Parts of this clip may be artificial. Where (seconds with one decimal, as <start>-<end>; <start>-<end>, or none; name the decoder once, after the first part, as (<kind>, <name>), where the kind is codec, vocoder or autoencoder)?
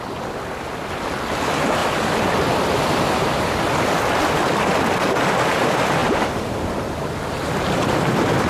1.8-5.6 (vocoder, BigVGAN v2); 6.0-6.5